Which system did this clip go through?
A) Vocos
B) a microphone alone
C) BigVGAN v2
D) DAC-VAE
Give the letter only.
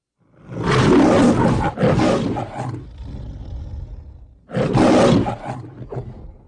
B